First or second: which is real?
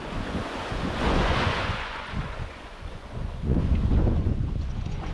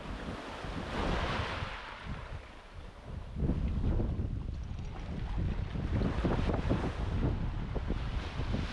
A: second